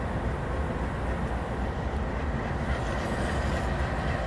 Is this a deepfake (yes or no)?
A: yes